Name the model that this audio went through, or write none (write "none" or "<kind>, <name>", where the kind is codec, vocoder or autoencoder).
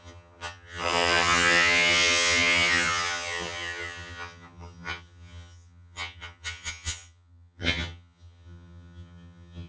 vocoder, HiFi-GAN